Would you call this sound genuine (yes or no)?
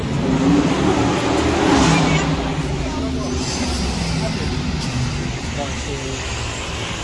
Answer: yes